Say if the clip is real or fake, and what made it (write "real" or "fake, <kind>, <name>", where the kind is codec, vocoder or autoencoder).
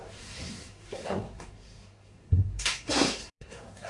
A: fake, codec, SNAC